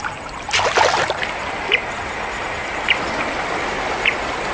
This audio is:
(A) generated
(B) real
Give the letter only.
B